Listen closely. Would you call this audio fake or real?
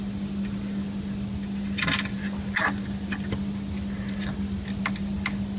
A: real